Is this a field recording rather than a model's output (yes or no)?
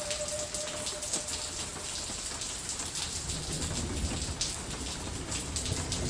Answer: yes